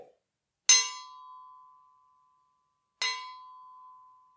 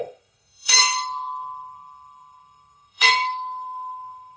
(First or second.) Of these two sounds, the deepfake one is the second